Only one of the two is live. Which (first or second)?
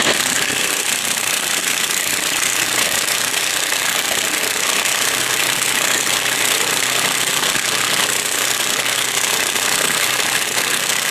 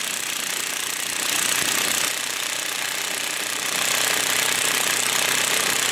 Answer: second